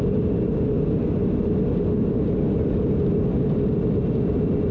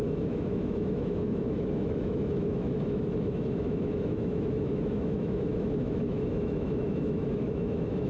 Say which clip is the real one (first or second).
first